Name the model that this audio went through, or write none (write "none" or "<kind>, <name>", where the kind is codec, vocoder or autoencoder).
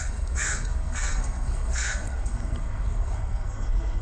codec, SNAC